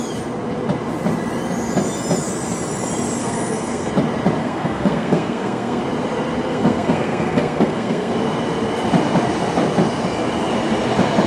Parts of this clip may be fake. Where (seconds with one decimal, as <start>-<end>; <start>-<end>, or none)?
3.2-3.9; 4.4-5.8; 6.5-8.1